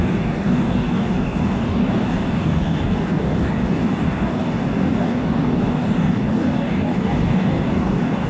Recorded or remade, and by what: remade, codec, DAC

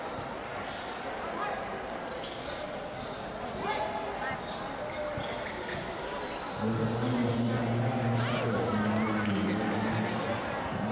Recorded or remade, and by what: recorded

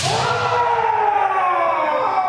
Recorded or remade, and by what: recorded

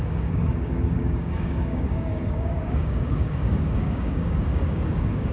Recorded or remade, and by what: remade, codec, DAC